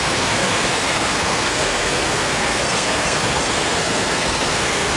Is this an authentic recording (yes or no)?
no